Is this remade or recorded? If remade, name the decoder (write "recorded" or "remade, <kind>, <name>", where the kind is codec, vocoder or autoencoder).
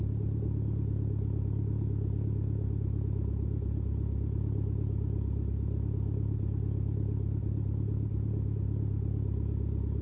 recorded